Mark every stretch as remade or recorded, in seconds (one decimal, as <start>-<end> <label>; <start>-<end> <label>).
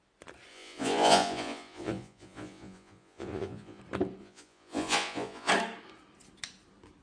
0.0-0.5 recorded; 0.5-3.8 remade; 3.8-4.2 recorded; 4.2-5.5 remade; 5.5-7.0 recorded